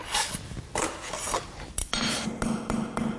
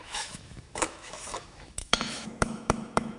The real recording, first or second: first